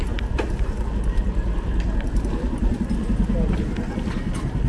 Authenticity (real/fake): fake